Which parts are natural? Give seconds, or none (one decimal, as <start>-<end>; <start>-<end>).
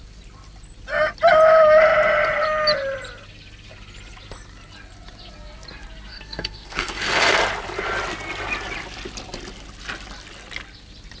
0.0-6.1; 7.4-11.2